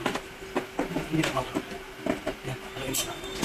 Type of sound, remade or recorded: recorded